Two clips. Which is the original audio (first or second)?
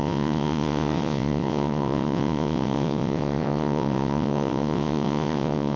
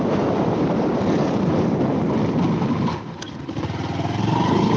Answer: second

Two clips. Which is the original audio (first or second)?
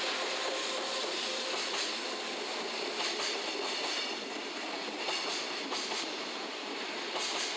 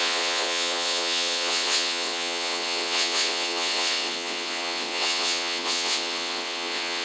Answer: first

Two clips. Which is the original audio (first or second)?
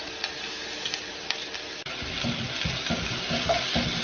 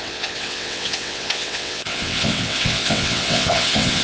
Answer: first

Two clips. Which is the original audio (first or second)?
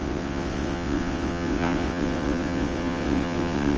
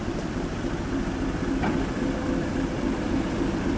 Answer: second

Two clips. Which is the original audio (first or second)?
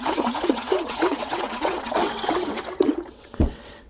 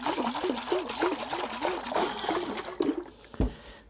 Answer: second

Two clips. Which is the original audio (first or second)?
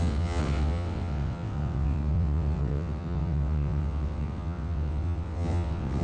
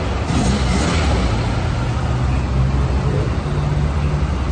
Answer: second